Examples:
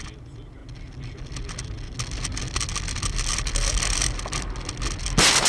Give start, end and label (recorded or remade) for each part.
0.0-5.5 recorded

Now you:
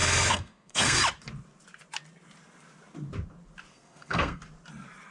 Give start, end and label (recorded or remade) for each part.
0.0-1.0 remade; 1.0-3.7 recorded; 3.7-4.4 remade; 4.4-5.1 recorded